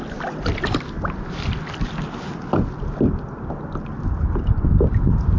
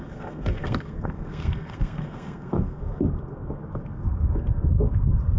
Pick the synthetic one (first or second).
second